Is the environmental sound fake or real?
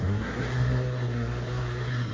fake